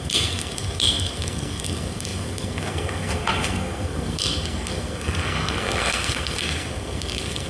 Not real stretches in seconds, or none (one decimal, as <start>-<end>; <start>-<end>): 0.0-7.5